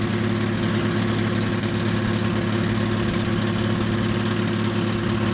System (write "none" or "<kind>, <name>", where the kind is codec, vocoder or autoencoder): none